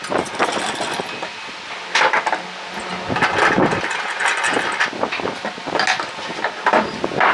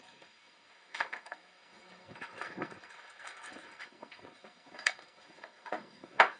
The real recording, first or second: first